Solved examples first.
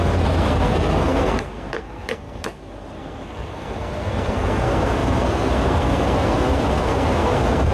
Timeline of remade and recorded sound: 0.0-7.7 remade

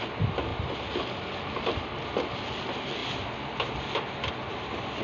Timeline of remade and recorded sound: 0.0-5.0 recorded

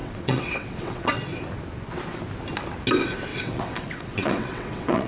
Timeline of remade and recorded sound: 0.0-1.1 remade; 1.1-3.3 recorded; 3.3-5.1 remade

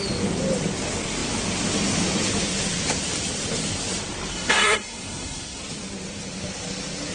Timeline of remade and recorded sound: 0.0-4.3 recorded; 4.3-5.6 remade; 5.6-7.1 recorded

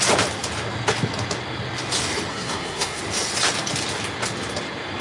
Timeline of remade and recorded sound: 0.0-2.3 recorded; 2.3-3.0 remade; 3.0-5.0 recorded